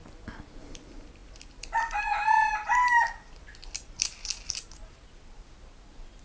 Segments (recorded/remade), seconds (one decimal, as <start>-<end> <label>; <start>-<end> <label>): 0.0-6.2 recorded